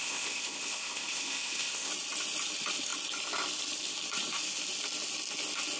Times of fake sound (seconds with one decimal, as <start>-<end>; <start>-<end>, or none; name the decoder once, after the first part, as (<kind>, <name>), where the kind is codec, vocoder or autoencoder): 0.0-1.9 (codec, ZipCodec)